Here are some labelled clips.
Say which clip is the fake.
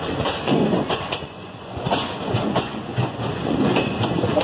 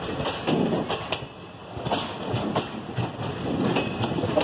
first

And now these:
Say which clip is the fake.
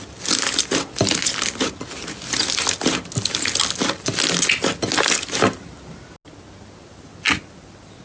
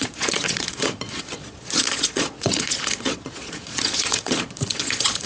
second